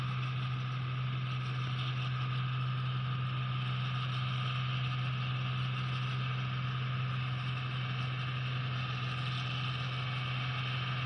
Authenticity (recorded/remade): recorded